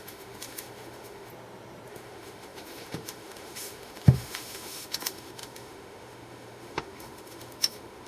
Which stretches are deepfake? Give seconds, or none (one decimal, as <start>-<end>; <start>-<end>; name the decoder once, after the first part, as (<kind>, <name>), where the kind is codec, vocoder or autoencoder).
0.0-1.3 (autoencoder, DAC-VAE); 1.9-8.1